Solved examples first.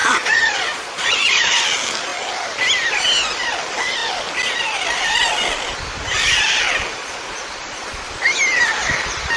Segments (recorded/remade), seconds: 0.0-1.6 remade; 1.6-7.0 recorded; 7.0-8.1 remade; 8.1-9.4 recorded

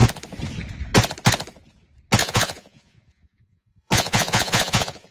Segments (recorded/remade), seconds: 0.0-2.2 recorded; 2.2-5.1 remade

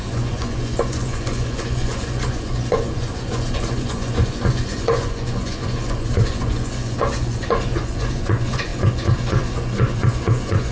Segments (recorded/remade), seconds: 0.0-10.7 remade